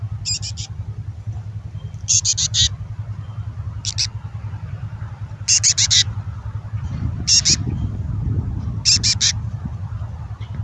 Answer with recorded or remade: recorded